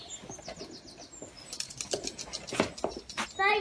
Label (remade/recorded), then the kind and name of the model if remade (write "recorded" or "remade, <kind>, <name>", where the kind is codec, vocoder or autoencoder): recorded